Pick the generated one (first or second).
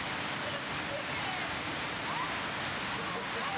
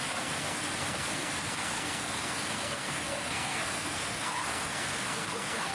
second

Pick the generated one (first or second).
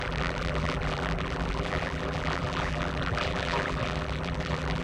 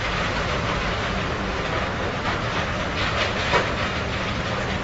first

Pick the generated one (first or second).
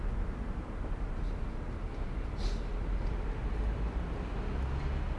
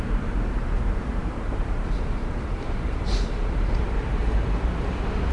second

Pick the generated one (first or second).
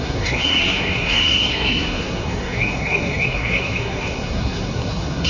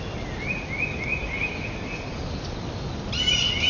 first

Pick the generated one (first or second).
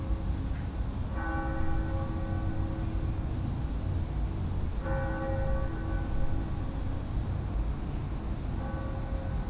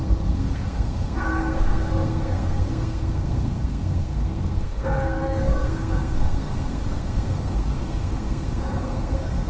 second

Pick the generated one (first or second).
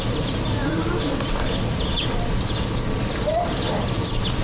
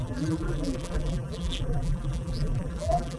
second